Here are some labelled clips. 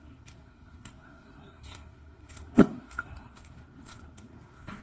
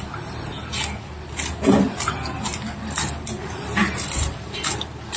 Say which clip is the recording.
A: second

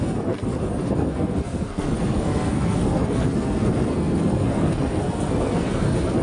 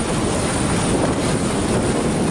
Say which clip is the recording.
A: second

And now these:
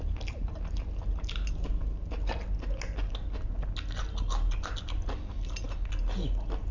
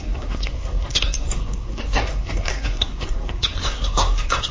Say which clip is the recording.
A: first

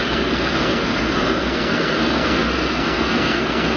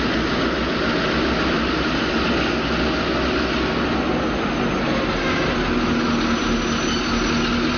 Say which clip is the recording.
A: second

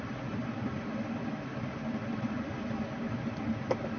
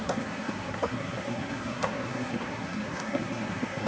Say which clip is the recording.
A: first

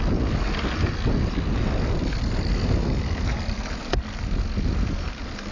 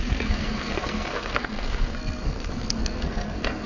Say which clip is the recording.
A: first